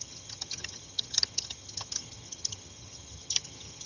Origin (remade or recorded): remade